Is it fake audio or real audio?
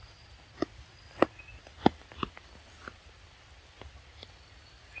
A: real